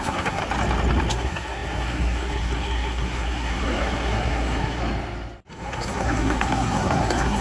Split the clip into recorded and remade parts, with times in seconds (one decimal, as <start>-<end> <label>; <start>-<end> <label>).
0.0-0.4 remade; 0.4-1.1 recorded; 1.1-4.8 remade; 4.8-5.5 recorded; 5.5-7.4 remade